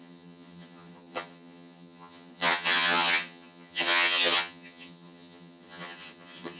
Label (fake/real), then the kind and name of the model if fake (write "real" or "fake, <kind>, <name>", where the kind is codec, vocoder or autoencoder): fake, vocoder, HiFi-GAN